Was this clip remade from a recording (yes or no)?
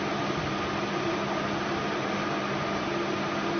no